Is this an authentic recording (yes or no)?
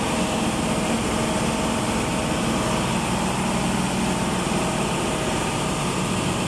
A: yes